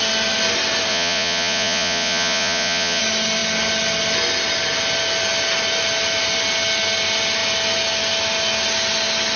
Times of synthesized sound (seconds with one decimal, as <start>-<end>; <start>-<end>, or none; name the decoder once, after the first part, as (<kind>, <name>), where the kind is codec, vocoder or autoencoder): 0.9-3.0 (vocoder, Vocos)